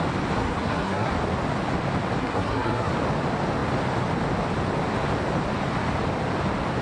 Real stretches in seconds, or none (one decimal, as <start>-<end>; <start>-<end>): 0.0-0.4; 1.1-2.2; 2.9-6.8